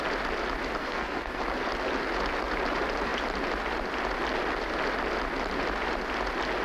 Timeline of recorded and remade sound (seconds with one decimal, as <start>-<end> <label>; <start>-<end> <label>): 0.0-0.8 recorded; 0.8-1.4 remade; 1.4-6.6 recorded